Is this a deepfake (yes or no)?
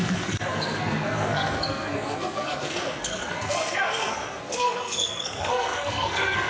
yes